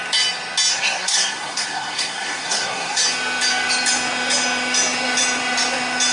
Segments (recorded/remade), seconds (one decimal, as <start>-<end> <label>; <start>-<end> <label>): 0.0-0.7 recorded; 0.7-3.0 remade; 3.0-6.1 recorded